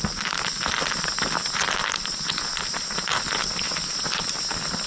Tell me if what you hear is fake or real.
real